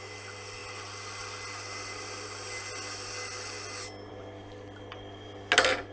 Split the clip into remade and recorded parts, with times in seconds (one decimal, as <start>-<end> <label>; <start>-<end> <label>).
0.0-5.9 recorded